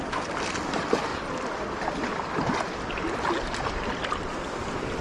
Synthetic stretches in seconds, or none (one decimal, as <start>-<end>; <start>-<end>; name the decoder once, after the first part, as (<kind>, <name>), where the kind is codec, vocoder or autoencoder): none